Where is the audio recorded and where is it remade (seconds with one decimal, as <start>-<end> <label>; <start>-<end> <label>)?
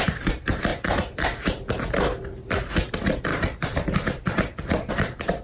0.0-0.7 remade; 0.7-2.9 recorded; 2.9-5.4 remade